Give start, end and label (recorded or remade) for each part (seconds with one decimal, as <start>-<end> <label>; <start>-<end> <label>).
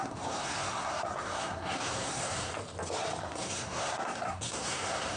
0.0-2.5 remade; 2.5-3.2 recorded; 3.2-5.2 remade